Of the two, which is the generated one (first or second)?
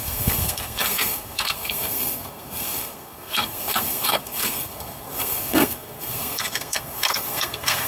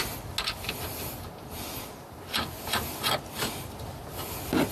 first